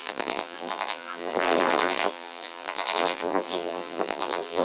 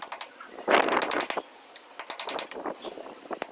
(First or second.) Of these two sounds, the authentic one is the second